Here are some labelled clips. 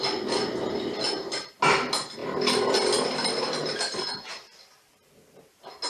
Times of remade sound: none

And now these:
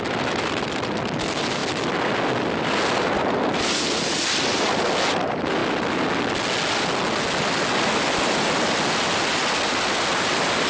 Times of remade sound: none

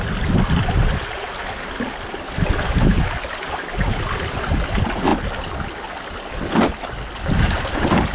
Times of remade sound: none

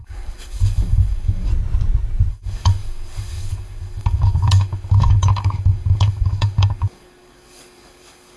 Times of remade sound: 0.0-1.5; 2.3-8.4

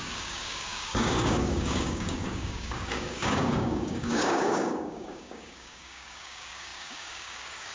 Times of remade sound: 0.0-7.7

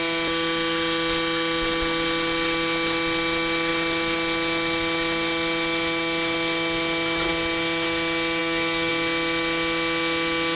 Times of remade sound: 8.4-8.9

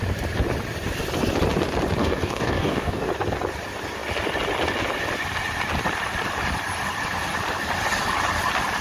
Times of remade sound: 2.0-3.1